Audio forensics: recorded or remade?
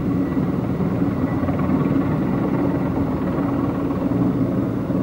recorded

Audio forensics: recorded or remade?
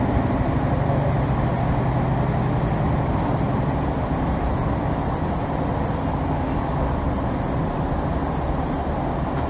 recorded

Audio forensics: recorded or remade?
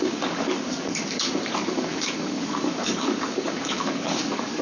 remade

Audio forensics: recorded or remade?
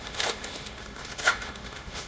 remade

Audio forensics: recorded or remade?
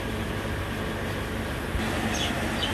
recorded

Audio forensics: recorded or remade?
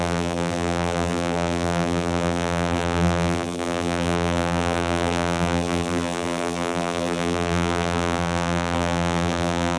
remade